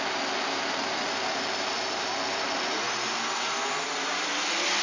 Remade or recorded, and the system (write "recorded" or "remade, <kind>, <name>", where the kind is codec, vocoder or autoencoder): recorded